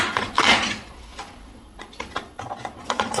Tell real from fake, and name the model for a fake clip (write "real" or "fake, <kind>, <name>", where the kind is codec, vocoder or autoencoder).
fake, vocoder, Vocos